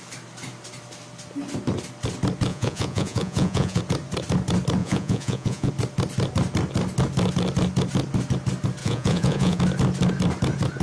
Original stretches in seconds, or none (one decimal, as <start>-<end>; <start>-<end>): 0.0-2.5; 3.8-4.8; 5.7-8.8; 9.6-10.8